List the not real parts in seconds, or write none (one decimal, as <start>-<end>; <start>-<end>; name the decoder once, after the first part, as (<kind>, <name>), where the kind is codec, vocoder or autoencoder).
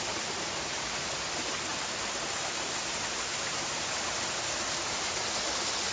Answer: 1.7-5.2 (vocoder, BigVGAN v2)